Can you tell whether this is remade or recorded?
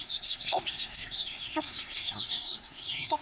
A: remade